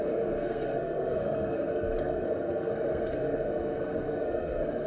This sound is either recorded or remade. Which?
remade